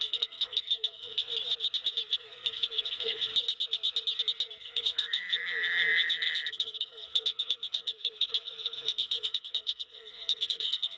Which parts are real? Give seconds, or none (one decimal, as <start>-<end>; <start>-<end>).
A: 1.3-2.1; 3.3-4.6